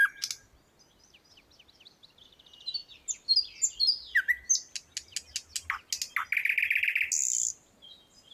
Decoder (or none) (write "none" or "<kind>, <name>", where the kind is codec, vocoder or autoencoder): none